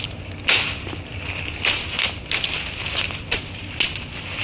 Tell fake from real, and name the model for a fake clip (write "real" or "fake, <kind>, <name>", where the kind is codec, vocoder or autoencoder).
real